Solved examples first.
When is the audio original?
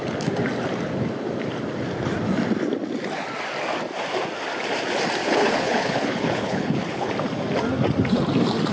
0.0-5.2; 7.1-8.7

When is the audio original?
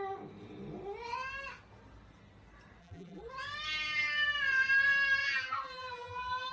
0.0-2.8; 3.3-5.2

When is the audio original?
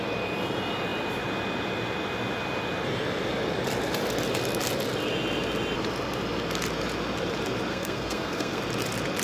0.0-7.7; 8.6-9.2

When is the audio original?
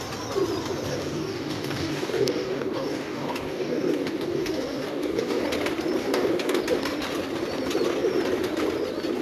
0.0-0.9; 5.4-6.0; 6.6-9.2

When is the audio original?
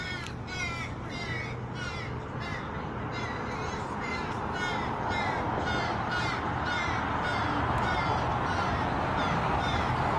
0.0-10.2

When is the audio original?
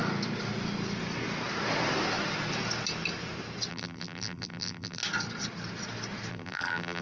0.0-3.7; 5.0-6.3